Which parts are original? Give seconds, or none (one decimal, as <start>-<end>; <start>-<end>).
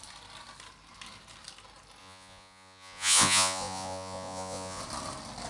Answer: 0.0-2.0; 4.8-5.5